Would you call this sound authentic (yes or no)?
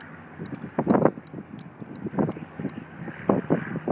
yes